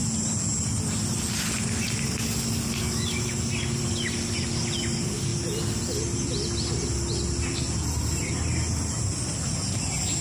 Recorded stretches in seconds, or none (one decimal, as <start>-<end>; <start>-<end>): 0.0-10.2